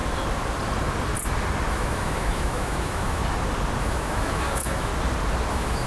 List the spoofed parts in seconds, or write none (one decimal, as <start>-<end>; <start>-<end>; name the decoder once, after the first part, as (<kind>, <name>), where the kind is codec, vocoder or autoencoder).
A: 1.7-3.2 (autoencoder, DAC-VAE); 3.8-4.9; 5.5-5.9